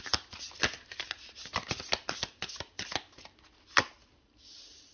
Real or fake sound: real